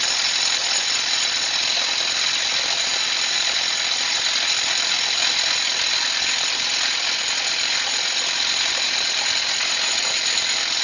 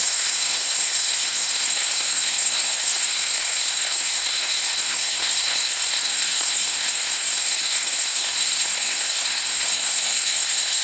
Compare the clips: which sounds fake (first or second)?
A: second